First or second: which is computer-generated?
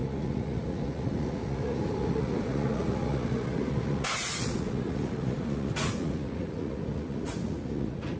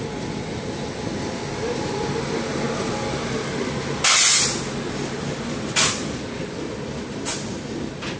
first